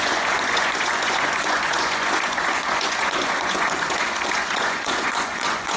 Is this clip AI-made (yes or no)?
yes